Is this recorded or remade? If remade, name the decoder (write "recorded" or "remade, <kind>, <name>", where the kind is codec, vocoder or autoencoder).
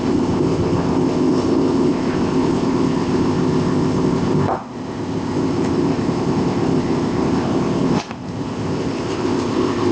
remade, codec, ZipCodec